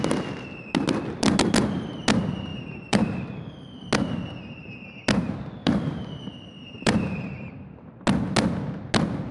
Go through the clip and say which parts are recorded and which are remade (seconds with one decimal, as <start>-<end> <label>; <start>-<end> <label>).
0.0-2.5 recorded; 2.5-3.2 remade; 3.2-5.6 recorded; 5.6-7.3 remade; 7.3-9.3 recorded